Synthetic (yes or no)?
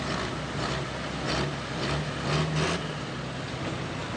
no